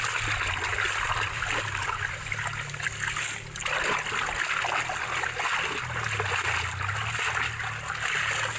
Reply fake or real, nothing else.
real